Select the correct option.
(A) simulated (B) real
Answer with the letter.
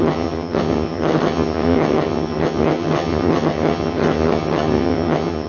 A